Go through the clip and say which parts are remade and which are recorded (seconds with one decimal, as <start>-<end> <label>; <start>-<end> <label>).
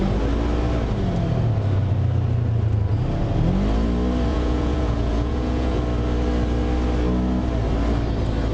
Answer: 0.0-4.3 recorded; 4.3-5.8 remade; 5.8-8.5 recorded